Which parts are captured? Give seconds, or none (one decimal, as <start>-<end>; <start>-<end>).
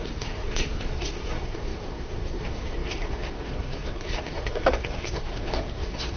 none